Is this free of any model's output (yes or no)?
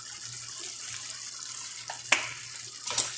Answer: yes